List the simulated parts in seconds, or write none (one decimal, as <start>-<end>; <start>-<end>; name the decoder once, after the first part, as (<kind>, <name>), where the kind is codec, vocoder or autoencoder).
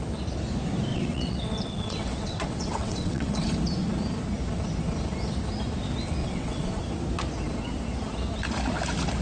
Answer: 0.9-3.5 (vocoder, WaveNeXt); 6.2-6.8